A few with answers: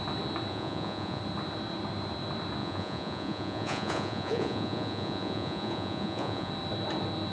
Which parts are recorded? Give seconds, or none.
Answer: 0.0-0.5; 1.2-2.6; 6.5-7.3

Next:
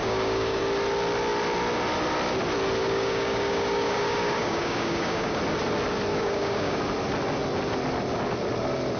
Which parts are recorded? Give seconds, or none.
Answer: 0.6-2.8; 5.4-6.1; 6.8-9.0

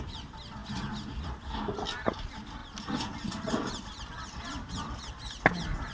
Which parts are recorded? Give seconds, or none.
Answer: 0.0-5.9

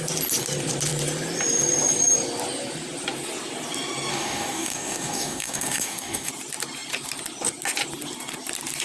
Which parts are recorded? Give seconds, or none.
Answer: 0.0-4.1; 6.3-8.8

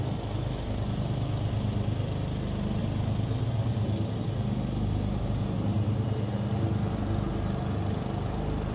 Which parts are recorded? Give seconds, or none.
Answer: 0.0-8.7

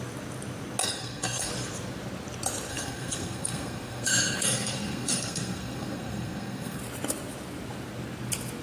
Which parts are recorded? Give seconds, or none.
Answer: 0.0-0.8; 1.5-2.7; 6.8-8.6